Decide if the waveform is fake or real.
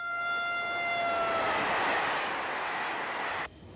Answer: real